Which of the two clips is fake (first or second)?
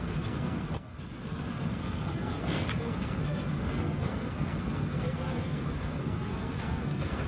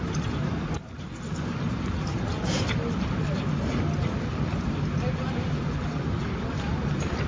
first